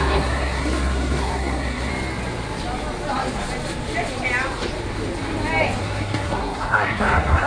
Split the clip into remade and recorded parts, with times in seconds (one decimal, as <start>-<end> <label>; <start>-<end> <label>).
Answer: 0.0-1.9 remade; 1.9-5.8 recorded; 5.8-7.5 remade